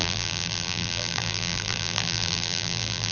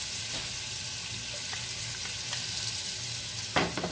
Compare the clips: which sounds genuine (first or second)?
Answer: second